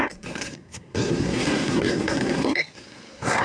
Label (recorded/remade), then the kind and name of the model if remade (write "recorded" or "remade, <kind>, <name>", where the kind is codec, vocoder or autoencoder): remade, codec, SNAC